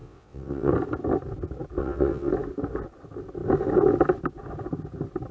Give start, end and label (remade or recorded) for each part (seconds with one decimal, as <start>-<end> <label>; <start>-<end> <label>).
0.0-0.7 remade; 0.7-1.8 recorded; 1.8-2.3 remade; 2.3-5.3 recorded